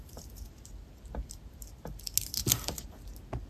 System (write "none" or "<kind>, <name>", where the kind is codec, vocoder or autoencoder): none